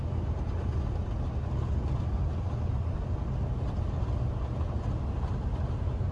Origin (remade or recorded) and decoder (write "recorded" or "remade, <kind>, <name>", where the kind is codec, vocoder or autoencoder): recorded